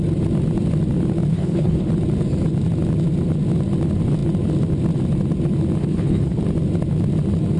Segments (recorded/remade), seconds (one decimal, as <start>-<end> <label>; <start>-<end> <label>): 0.0-1.3 recorded; 1.3-1.9 remade; 1.9-5.8 recorded; 5.8-6.4 remade; 6.4-7.6 recorded